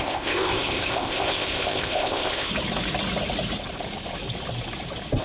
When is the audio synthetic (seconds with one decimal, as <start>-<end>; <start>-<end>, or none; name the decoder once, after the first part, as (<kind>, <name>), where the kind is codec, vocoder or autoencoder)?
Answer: 0.0-2.5 (codec, ZipCodec)